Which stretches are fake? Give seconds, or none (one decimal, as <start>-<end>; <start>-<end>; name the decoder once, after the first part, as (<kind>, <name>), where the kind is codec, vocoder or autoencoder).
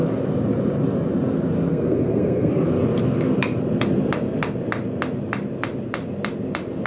1.7-2.5 (codec, SNAC)